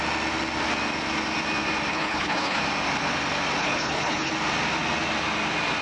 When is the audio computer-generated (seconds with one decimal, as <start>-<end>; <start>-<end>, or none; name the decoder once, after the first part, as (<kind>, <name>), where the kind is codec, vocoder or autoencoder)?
1.9-2.6 (codec, HILCodec); 3.6-4.3